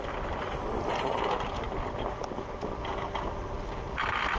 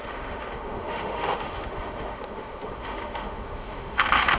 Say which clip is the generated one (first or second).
second